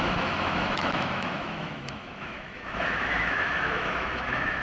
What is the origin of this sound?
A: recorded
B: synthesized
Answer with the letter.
B